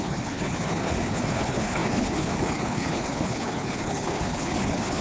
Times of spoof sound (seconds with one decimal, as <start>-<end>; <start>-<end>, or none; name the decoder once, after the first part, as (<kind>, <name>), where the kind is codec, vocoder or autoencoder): 0.0-5.0 (codec, HILCodec)